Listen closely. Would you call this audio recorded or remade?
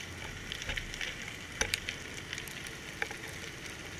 recorded